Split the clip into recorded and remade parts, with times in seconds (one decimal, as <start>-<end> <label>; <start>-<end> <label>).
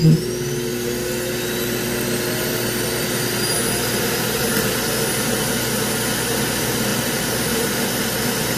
0.0-8.6 recorded